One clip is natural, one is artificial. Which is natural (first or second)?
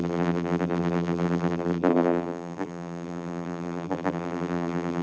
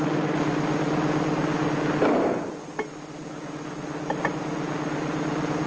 second